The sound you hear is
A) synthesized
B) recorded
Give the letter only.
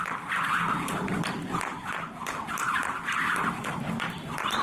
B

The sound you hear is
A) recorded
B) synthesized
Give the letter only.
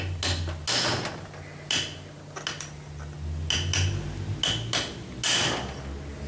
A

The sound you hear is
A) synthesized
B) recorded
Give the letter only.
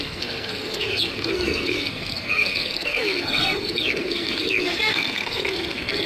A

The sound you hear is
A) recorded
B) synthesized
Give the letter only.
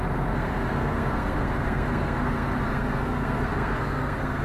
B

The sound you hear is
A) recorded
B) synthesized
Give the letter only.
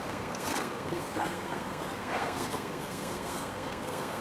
B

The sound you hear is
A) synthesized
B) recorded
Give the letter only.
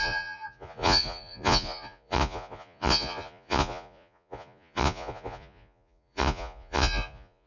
A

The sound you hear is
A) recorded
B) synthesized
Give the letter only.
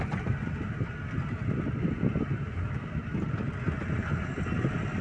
A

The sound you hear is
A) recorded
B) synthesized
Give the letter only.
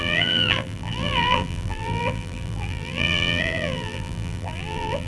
B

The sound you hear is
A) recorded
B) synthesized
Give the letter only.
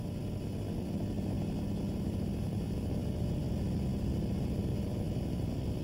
A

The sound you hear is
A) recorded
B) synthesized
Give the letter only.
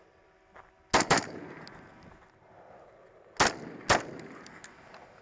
A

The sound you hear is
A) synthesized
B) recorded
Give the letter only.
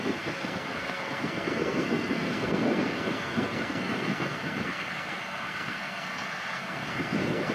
A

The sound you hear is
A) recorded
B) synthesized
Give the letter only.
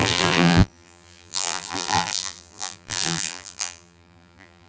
B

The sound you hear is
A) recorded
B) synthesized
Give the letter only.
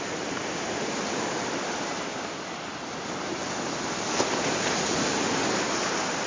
A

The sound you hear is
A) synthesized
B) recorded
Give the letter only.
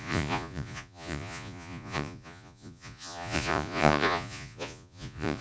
A